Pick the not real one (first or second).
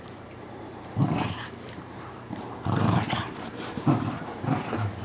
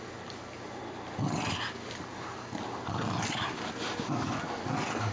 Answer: first